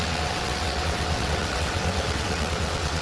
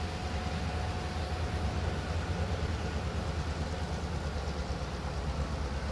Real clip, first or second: second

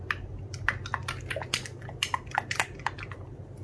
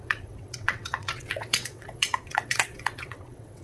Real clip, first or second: first